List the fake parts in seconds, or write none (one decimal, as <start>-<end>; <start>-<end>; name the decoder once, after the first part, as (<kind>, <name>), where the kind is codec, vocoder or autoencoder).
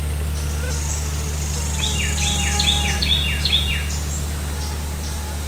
3.0-3.7 (vocoder, Vocos)